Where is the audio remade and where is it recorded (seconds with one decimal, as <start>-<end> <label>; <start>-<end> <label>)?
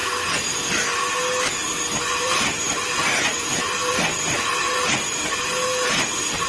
0.0-2.2 recorded; 2.2-6.5 remade